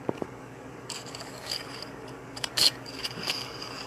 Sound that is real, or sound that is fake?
fake